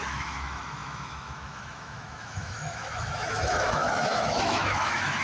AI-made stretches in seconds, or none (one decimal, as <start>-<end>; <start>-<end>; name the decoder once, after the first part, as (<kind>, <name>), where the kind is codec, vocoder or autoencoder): 0.0-5.2 (autoencoder, DAC-VAE)